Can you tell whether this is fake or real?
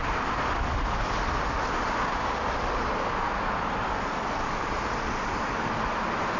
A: real